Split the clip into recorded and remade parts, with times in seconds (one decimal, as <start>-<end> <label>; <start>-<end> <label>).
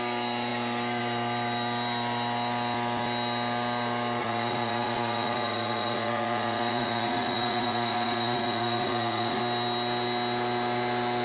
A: 0.0-4.2 recorded; 4.2-9.4 remade; 9.4-11.2 recorded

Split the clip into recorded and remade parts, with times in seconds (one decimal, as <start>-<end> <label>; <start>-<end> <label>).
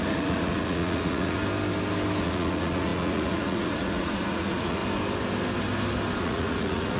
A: 0.0-1.4 remade; 1.4-2.2 recorded; 2.2-4.8 remade; 4.8-6.2 recorded; 6.2-7.0 remade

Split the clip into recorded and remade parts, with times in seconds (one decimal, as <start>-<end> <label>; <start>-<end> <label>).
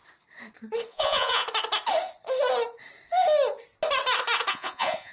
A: 0.0-0.9 recorded; 0.9-1.4 remade; 1.4-4.5 recorded; 4.5-5.1 remade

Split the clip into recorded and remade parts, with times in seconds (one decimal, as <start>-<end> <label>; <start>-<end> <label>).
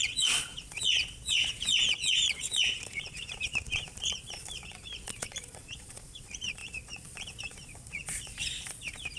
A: 0.0-9.2 remade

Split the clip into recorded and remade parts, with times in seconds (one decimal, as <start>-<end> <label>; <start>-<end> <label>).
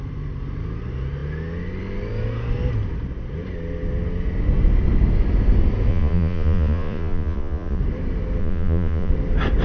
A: 0.0-5.9 recorded; 5.9-7.8 remade; 7.8-8.4 recorded; 8.4-9.1 remade; 9.1-9.6 recorded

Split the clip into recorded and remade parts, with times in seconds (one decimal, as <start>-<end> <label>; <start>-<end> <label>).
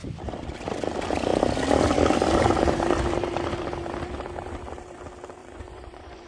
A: 0.0-5.4 recorded; 5.4-6.3 remade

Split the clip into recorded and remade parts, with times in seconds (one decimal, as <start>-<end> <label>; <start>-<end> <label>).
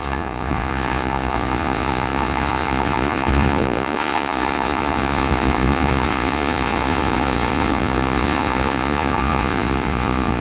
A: 0.0-10.4 remade